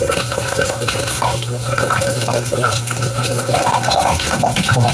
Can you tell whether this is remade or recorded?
remade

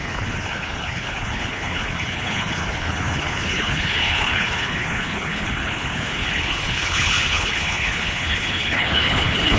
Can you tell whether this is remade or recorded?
remade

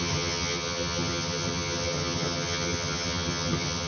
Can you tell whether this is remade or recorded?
remade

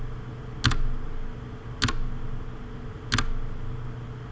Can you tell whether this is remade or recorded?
recorded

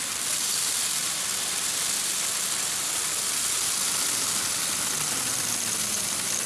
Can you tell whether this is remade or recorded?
recorded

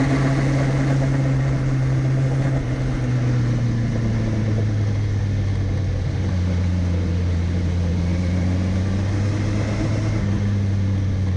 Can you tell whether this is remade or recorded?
recorded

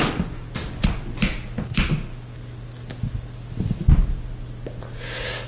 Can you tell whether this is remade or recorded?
recorded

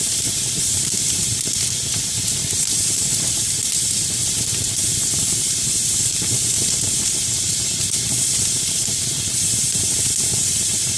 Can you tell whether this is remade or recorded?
remade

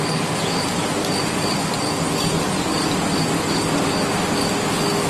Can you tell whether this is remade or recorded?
recorded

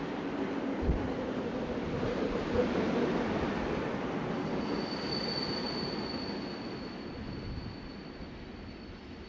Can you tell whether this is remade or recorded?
recorded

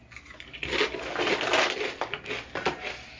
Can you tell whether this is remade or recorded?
recorded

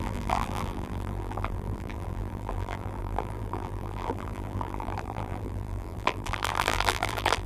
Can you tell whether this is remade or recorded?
remade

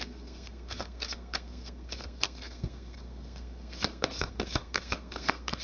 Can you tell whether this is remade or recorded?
remade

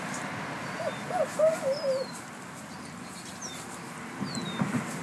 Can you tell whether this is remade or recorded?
recorded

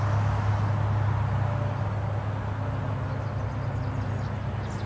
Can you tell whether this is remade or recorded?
recorded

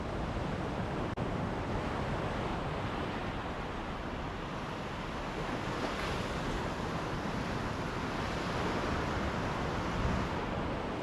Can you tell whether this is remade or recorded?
recorded